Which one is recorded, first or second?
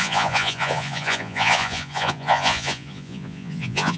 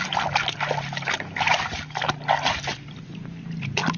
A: second